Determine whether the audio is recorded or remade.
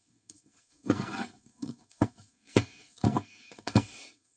remade